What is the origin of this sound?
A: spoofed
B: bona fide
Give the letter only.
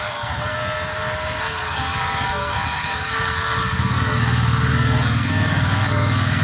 A